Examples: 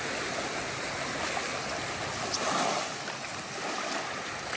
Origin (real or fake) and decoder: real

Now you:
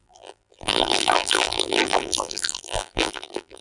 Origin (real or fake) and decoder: fake, vocoder, BigVGAN v2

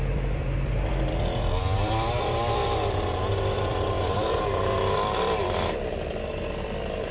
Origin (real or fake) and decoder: fake, vocoder, BigVGAN v2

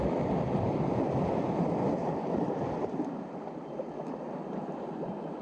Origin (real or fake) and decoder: real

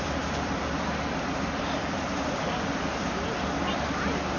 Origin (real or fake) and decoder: fake, vocoder, BigVGAN v2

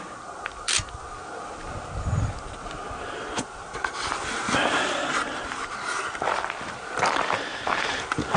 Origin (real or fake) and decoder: real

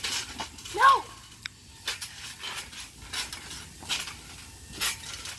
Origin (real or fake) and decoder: real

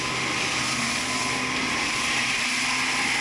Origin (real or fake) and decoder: real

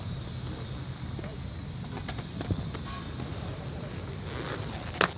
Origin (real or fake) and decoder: real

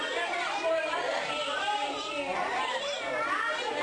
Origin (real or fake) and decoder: fake, vocoder, BigVGAN v2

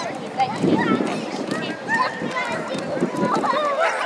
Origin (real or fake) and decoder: fake, vocoder, BigVGAN v2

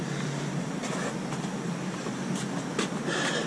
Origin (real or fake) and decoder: fake, vocoder, BigVGAN v2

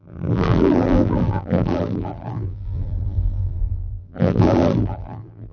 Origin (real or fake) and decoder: fake, vocoder, BigVGAN v2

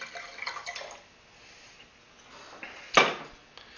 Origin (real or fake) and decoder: real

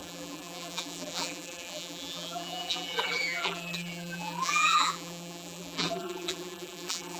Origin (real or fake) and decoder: fake, vocoder, BigVGAN v2